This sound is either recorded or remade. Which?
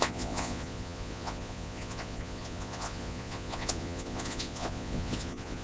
remade